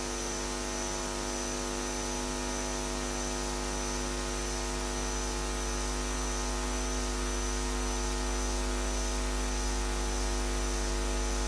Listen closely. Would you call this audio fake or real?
real